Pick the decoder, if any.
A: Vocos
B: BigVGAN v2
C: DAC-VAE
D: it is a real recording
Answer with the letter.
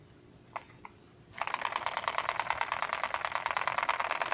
D